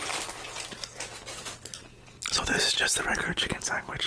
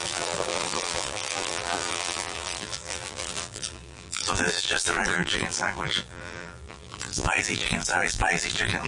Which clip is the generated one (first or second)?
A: second